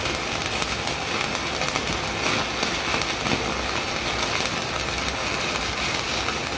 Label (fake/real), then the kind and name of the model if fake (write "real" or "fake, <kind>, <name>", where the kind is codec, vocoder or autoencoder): real